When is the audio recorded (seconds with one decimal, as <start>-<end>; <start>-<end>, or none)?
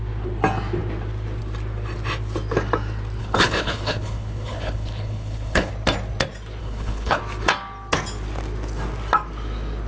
0.0-3.2; 5.7-6.6; 7.2-9.9